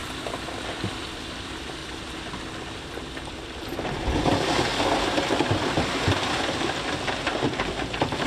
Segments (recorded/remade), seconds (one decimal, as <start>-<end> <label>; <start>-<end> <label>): 0.0-1.0 recorded; 1.0-1.8 remade; 1.8-3.2 recorded; 3.2-4.7 remade; 4.7-5.8 recorded; 5.8-8.3 remade